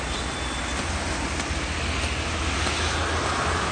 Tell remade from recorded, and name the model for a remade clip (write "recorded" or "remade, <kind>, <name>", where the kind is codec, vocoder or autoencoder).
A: recorded